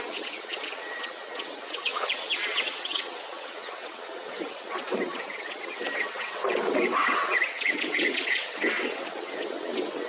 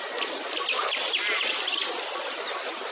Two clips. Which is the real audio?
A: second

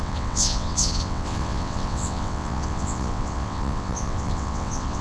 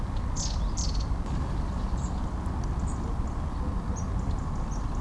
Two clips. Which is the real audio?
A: second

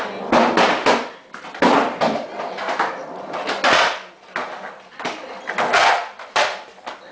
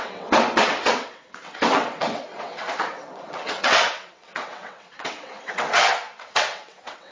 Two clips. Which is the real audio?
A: first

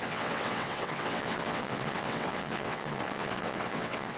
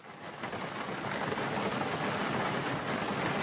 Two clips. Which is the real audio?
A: second